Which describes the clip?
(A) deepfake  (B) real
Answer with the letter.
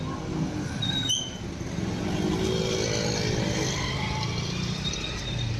B